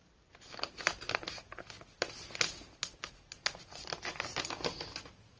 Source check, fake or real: real